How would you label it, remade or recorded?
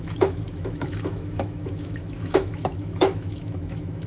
remade